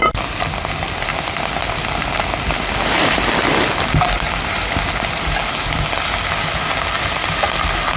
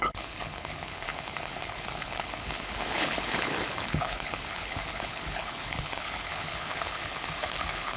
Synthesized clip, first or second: second